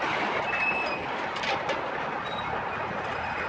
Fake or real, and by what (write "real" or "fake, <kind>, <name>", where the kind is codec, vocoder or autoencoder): real